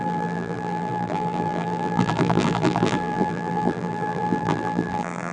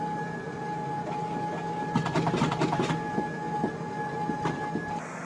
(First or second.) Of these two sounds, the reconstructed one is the first